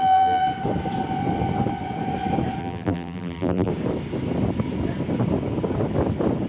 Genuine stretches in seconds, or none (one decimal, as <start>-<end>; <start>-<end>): 0.4-2.6; 3.7-6.5

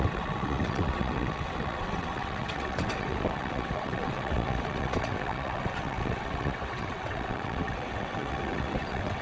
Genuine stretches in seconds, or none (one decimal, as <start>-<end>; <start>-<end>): none

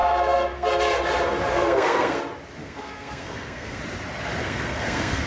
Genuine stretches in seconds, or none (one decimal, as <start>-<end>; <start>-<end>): 0.7-1.5; 2.2-2.6; 3.8-4.4

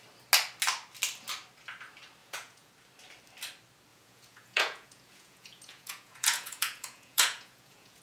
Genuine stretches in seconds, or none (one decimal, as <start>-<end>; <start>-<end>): 0.0-2.2; 2.7-3.9

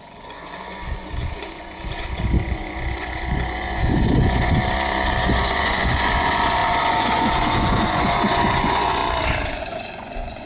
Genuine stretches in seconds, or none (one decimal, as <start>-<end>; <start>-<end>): 4.6-5.2; 9.0-9.5

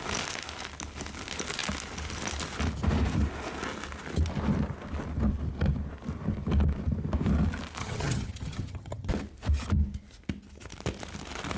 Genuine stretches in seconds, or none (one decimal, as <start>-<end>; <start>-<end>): 0.0-7.8; 9.1-11.6

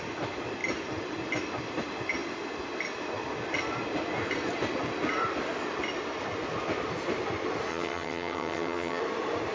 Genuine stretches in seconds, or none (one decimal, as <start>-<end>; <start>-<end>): 0.0-7.7; 9.0-9.5

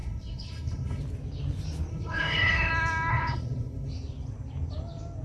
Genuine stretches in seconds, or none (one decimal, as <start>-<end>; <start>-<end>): 1.0-1.9; 2.7-3.1; 3.9-5.2